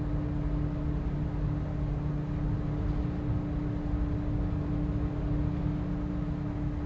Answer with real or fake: real